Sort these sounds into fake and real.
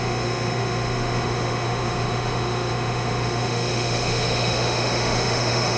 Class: fake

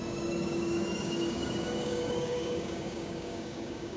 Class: fake